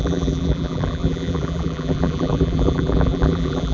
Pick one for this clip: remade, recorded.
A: remade